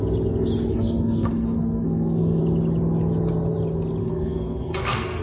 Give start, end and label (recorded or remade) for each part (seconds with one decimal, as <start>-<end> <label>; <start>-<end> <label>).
0.0-0.7 recorded; 0.7-2.4 remade; 2.4-4.0 recorded; 4.0-5.2 remade